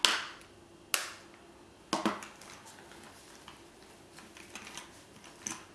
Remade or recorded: recorded